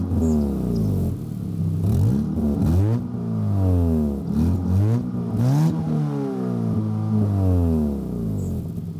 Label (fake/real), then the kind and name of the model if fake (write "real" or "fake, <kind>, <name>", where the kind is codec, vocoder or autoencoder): real